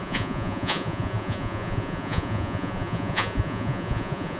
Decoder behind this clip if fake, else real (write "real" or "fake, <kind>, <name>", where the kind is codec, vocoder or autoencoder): fake, vocoder, Vocos